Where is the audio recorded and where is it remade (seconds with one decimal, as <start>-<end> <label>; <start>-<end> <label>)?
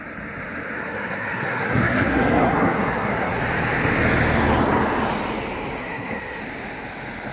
0.0-0.8 recorded; 0.8-3.4 remade; 3.4-5.8 recorded; 5.8-6.4 remade; 6.4-7.3 recorded